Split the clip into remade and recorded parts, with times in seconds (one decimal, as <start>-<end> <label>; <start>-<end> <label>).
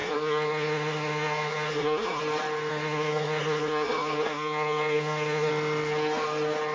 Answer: 0.0-2.2 remade; 2.2-2.7 recorded; 2.7-5.5 remade; 5.5-6.7 recorded